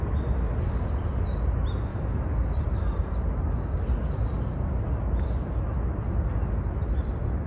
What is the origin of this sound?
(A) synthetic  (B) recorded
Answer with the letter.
B